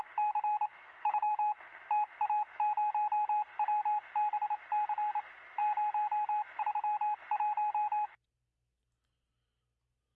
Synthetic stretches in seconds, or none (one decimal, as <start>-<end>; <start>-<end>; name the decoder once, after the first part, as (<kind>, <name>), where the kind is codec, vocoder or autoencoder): 0.7-1.3 (autoencoder, DAC-VAE)